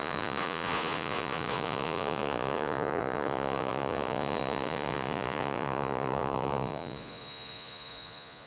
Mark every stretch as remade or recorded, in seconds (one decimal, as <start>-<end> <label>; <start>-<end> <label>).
0.0-8.5 remade